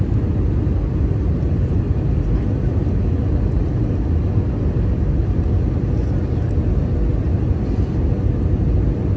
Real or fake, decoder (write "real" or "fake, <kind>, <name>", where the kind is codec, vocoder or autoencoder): real